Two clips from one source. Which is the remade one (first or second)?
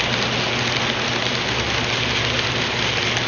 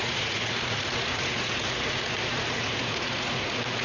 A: second